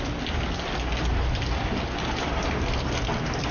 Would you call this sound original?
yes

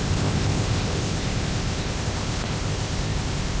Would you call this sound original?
no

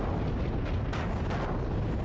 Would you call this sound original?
yes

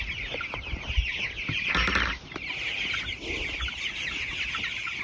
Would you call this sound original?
yes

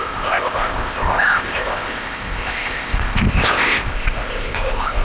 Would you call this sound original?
no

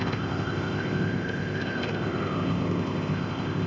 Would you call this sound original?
no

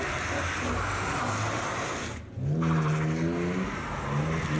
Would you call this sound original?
yes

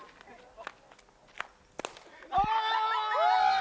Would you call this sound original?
yes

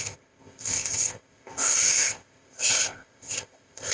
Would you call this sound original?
no